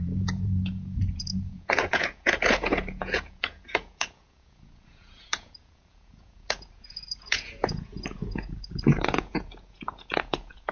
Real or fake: fake